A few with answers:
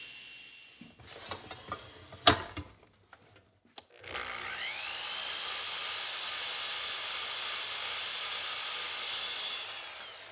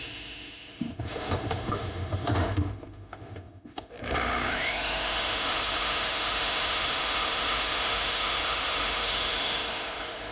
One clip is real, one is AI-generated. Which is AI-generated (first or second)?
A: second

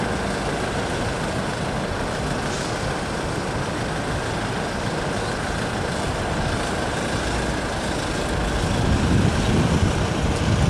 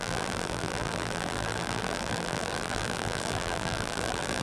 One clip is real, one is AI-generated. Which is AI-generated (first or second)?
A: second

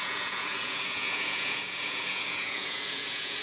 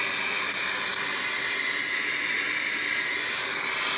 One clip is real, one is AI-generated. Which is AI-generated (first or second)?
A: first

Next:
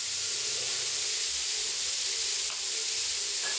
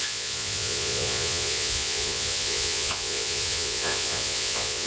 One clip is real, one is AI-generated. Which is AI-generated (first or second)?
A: second